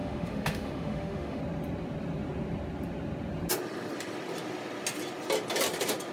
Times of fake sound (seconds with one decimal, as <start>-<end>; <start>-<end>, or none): 0.0-1.4